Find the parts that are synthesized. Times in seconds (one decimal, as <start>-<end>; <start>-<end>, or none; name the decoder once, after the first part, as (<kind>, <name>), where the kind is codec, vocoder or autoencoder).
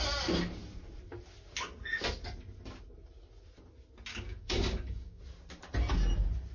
4.1-5.2 (codec, DAC)